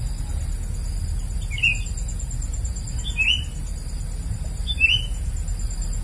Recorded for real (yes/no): yes